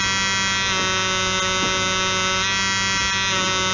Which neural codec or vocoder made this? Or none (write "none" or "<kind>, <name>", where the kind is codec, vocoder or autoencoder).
none